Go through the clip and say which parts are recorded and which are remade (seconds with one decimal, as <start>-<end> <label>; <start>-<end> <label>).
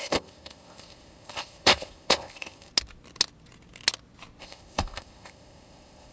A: 0.0-2.7 remade; 2.7-4.4 recorded; 4.4-6.1 remade